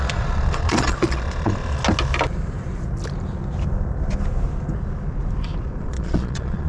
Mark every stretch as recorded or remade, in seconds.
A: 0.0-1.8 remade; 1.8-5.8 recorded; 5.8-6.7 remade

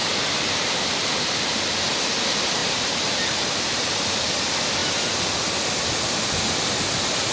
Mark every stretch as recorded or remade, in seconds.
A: 0.0-1.3 remade; 1.3-2.6 recorded; 2.6-4.3 remade; 4.3-7.3 recorded

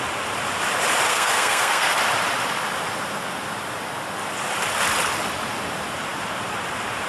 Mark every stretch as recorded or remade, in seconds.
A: 0.0-1.1 recorded; 1.1-1.9 remade; 1.9-7.1 recorded

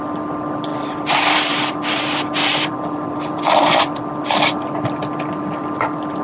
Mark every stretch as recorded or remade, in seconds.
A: 0.0-0.7 recorded; 0.7-2.0 remade; 2.0-2.4 recorded; 2.4-4.3 remade; 4.3-6.2 recorded

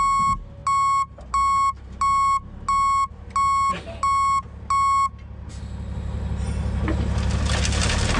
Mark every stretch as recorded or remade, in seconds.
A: 0.0-8.2 recorded

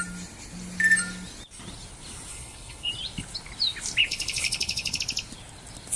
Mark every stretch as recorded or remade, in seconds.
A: 0.0-2.3 recorded; 2.3-2.9 remade; 2.9-4.0 recorded; 4.0-5.0 remade; 5.0-6.0 recorded

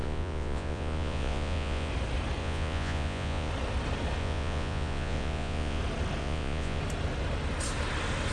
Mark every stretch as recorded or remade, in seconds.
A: 0.0-1.9 remade; 1.9-2.4 recorded; 2.4-3.5 remade; 3.5-4.2 recorded; 4.2-5.8 remade; 5.8-6.2 recorded; 6.2-6.8 remade; 6.8-8.3 recorded